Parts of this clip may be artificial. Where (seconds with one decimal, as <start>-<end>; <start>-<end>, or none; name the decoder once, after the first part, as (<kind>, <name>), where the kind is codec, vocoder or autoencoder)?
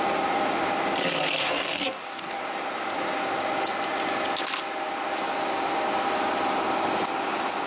1.4-2.4 (codec, DAC)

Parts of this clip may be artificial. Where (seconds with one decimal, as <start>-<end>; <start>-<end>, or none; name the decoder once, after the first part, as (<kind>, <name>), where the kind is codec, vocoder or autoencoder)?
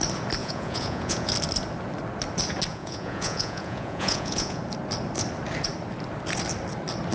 0.4-1.3 (vocoder, Vocos); 2.7-4.6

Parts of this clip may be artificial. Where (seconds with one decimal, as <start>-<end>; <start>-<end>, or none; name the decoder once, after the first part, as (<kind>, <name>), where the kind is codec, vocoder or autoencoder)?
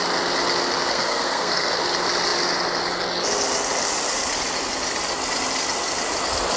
0.9-1.8 (codec, SNAC)